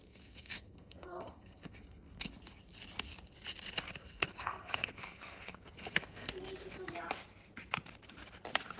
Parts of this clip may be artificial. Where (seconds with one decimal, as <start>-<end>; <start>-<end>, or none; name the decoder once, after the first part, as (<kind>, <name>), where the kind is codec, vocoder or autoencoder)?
0.0-2.3 (codec, SNAC); 4.0-6.3